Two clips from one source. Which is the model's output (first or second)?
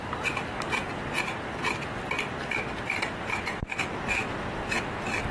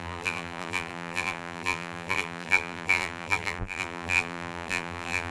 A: second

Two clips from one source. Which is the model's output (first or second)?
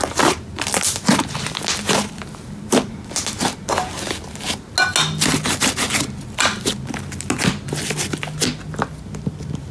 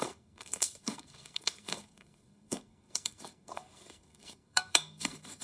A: second